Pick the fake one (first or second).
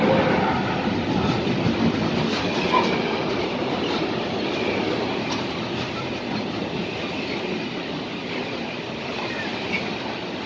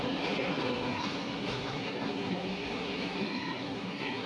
second